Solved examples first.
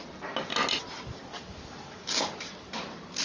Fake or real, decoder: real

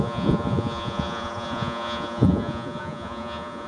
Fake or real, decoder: fake, vocoder, Vocos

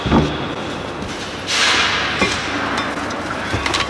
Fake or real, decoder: real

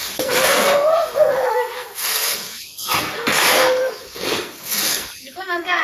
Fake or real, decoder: fake, codec, SNAC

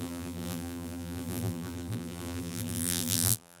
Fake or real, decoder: fake, vocoder, BigVGAN v2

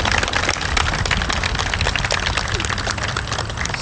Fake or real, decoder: real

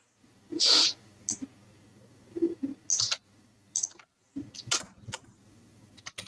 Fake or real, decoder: real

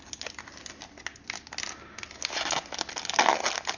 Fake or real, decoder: real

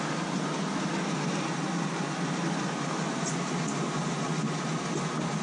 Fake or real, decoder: real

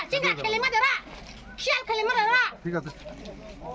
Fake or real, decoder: real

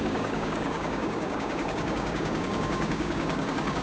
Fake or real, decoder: fake, codec, DAC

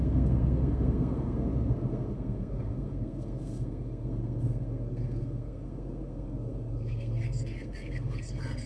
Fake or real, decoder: fake, codec, SNAC